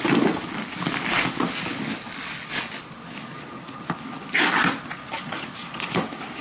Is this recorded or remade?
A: recorded